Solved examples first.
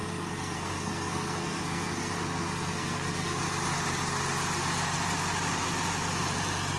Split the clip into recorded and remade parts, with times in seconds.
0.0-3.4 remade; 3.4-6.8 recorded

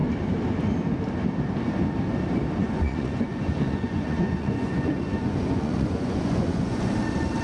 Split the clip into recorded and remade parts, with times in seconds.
0.0-2.6 recorded; 2.6-6.9 remade; 6.9-7.4 recorded

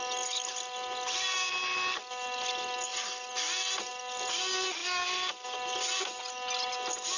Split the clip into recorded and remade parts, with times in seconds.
0.0-7.2 recorded

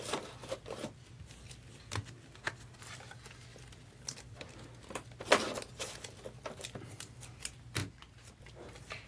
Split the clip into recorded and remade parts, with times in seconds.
0.0-9.1 recorded